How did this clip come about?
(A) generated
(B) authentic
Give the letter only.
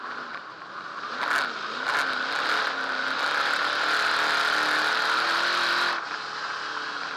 B